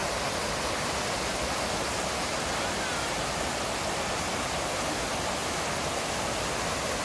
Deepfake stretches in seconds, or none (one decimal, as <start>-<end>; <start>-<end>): none